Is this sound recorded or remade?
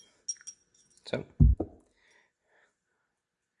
recorded